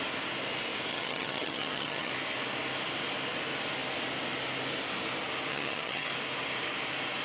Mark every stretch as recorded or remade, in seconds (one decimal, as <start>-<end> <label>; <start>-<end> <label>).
0.0-0.9 recorded; 0.9-2.1 remade; 2.1-5.5 recorded; 5.5-6.1 remade; 6.1-7.2 recorded

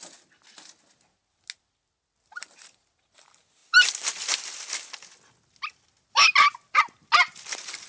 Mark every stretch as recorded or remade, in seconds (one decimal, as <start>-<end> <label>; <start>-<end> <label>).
0.0-7.9 recorded

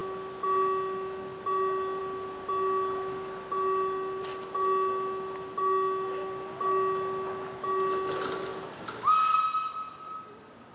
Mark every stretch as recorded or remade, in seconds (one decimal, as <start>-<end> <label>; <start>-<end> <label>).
0.0-10.7 recorded